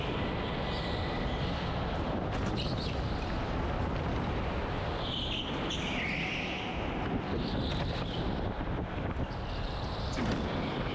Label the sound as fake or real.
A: real